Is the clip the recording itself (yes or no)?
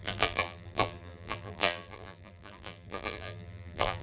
no